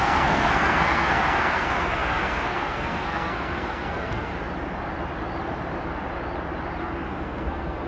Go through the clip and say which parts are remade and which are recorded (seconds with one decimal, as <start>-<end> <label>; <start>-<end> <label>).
0.0-4.3 remade; 4.3-6.8 recorded; 6.8-7.9 remade